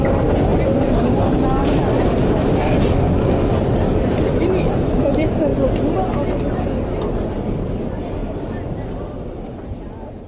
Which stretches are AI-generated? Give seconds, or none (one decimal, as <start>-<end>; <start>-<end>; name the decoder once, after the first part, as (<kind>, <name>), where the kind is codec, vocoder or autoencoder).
0.0-0.5 (vocoder, BigVGAN v2); 1.3-5.5; 7.3-8.2; 9.1-10.3